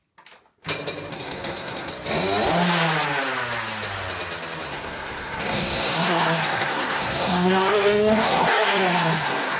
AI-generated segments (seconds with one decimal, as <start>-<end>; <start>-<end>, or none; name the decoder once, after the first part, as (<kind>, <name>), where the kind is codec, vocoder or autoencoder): 1.1-1.9 (codec, SNAC); 4.7-9.6